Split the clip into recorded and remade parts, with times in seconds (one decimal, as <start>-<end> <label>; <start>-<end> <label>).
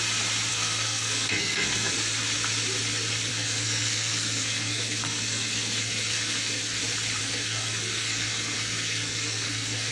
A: 0.0-0.5 recorded; 0.5-1.9 remade; 1.9-3.3 recorded; 3.3-6.8 remade; 6.8-7.2 recorded; 7.2-9.9 remade